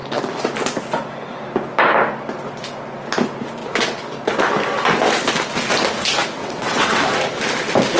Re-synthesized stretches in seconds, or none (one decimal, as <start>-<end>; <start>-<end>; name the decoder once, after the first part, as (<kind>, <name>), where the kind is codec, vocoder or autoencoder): 6.4-7.0 (vocoder, WaveNeXt)